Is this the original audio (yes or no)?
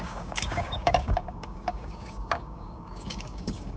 no